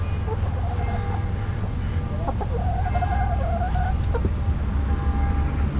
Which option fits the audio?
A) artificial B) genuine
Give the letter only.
B